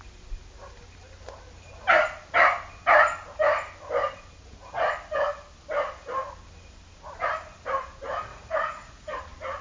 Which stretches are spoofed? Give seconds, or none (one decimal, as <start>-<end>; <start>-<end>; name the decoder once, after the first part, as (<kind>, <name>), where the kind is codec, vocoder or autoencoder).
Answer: 8.3-9.2 (vocoder, Vocos)